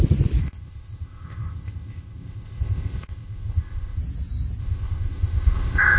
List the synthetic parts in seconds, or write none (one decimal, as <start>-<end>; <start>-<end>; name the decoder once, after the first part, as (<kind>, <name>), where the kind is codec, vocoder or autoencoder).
0.4-4.0 (codec, ZipCodec); 4.6-6.0